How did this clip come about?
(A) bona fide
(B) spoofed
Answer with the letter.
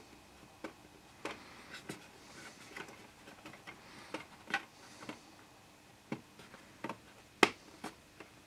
A